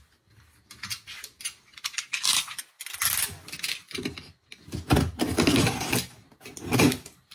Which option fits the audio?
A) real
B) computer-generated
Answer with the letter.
A